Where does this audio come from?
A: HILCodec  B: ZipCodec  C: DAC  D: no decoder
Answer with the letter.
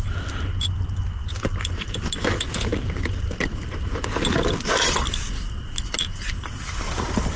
D